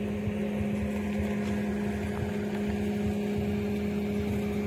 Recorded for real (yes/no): yes